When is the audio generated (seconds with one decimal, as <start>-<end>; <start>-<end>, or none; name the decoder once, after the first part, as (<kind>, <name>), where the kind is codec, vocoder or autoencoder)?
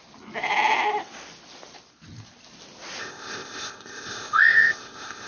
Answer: 3.0-5.3 (codec, ZipCodec)